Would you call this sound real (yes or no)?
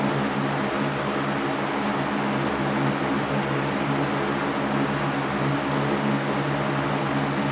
yes